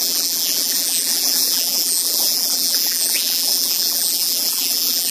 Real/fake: fake